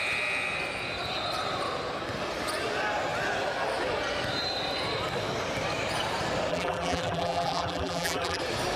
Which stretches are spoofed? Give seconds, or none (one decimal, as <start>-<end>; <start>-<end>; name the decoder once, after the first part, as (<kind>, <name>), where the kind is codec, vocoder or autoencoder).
6.5-8.4 (vocoder, BigVGAN v2)